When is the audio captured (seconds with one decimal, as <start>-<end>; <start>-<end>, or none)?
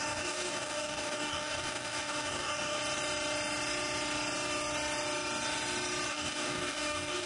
2.8-6.1